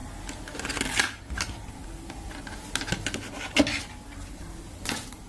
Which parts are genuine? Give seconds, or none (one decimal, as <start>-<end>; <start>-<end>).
0.0-5.3